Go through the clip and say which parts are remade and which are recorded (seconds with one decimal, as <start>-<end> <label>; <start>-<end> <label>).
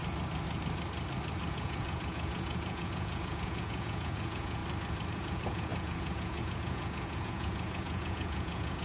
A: 0.0-1.5 recorded; 1.5-4.6 remade; 4.6-5.1 recorded; 5.1-8.8 remade